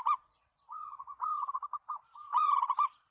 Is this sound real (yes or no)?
no